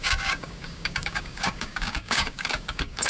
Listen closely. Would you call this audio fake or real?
fake